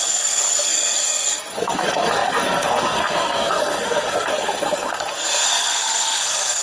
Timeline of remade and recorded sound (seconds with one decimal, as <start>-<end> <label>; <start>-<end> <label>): 0.0-6.6 remade